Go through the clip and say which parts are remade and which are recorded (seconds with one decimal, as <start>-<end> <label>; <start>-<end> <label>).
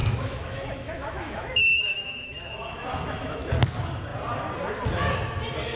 0.0-3.5 remade; 3.5-5.8 recorded